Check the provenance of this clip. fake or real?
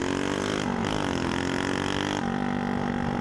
real